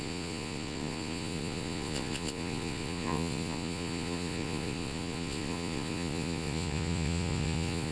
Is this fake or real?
fake